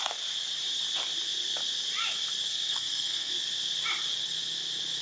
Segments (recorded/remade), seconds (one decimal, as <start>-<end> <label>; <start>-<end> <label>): 0.0-2.5 recorded; 2.5-3.3 remade; 3.3-5.0 recorded